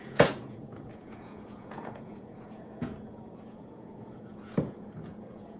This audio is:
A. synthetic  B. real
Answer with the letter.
A